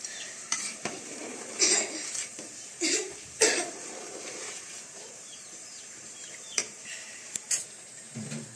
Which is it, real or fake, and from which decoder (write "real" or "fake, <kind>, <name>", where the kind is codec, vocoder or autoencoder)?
fake, vocoder, BigVGAN v2